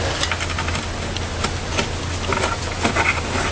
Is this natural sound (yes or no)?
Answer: yes